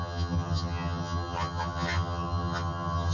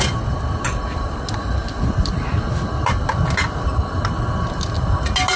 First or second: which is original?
second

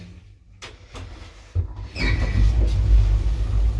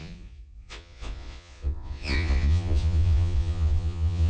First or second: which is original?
first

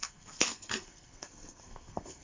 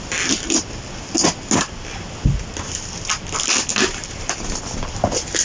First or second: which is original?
second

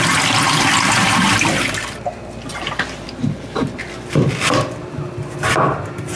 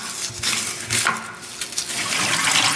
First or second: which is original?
second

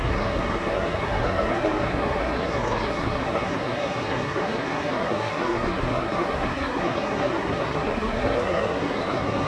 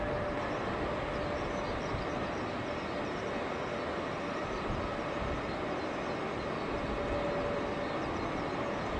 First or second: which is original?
second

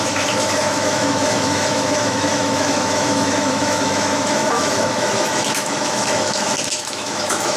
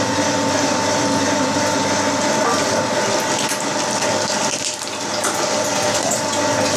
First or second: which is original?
second